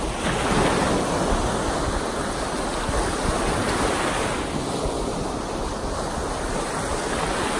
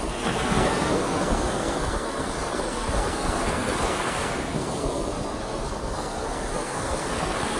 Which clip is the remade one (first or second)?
second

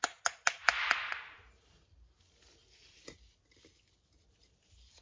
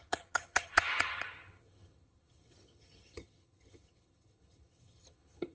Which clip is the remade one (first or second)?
second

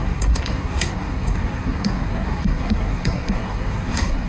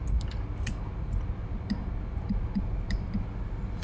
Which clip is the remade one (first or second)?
first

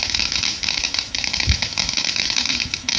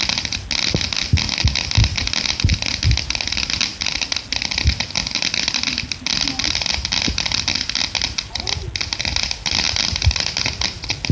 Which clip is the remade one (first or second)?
first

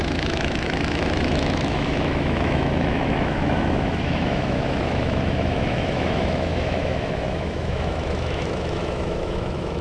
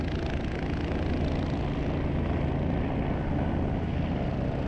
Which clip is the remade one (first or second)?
first